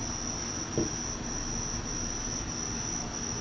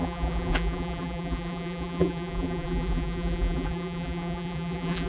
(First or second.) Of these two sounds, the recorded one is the first